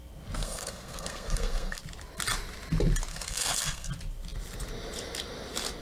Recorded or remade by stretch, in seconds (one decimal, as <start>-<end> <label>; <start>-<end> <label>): 0.0-0.4 recorded; 0.4-1.8 remade; 1.8-3.1 recorded; 3.1-3.9 remade; 3.9-5.8 recorded